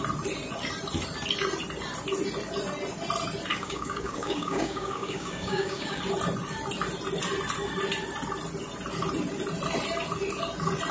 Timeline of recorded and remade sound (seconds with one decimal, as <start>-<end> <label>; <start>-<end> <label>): 0.0-3.5 recorded; 3.5-6.0 remade; 6.0-10.9 recorded